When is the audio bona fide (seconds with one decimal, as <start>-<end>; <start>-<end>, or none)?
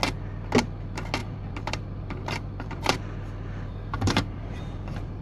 0.0-1.2; 3.0-3.7